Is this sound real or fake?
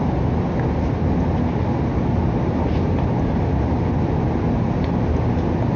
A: real